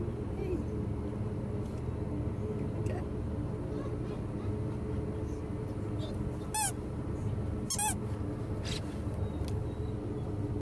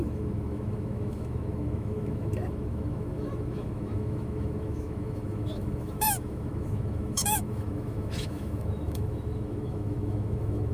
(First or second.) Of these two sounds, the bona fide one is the first